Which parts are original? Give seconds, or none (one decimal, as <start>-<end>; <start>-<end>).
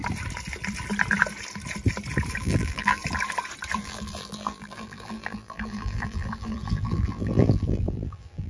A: 0.0-2.4; 3.0-3.8